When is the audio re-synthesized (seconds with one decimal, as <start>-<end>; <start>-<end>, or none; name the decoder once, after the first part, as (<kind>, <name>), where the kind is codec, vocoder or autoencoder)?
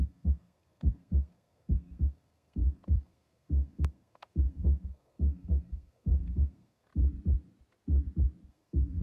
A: 0.0-6.9 (codec, SNAC); 8.5-9.0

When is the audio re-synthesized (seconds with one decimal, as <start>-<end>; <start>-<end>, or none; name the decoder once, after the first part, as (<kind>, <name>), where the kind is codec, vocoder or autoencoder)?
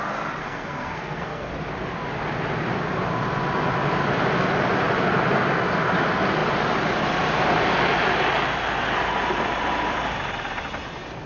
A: 0.4-1.5 (codec, SNAC)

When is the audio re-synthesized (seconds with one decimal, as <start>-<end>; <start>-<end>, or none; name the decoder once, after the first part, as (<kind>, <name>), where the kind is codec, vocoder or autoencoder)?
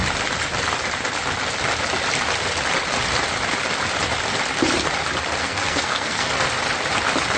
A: 5.4-6.3 (codec, SNAC)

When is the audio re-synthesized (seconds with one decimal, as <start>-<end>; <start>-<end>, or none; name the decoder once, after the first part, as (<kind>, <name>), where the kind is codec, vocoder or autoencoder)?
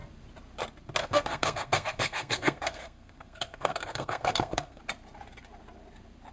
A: 1.0-4.8 (codec, SNAC)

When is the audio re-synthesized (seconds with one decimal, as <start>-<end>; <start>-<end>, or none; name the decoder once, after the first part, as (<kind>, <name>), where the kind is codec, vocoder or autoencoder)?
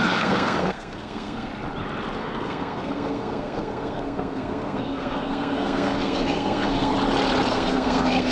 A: 0.0-1.5 (codec, SNAC); 2.2-6.9; 7.5-8.3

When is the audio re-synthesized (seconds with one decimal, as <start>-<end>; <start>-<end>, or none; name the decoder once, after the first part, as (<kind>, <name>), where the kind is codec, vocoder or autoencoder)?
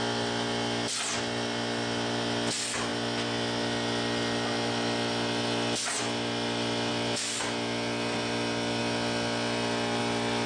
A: none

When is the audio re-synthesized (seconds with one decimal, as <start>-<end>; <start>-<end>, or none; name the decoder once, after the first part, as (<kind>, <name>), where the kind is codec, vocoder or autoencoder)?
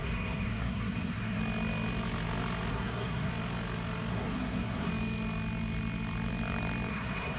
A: 0.0-1.4 (codec, SNAC); 2.7-3.3; 4.1-4.9; 6.9-7.4